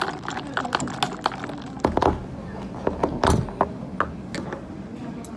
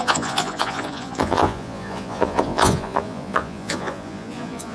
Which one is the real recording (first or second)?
first